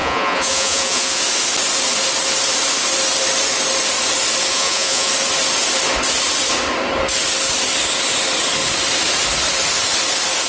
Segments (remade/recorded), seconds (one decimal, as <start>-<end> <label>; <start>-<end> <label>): 0.0-1.2 remade; 1.2-4.5 recorded; 4.5-5.1 remade; 5.1-10.5 recorded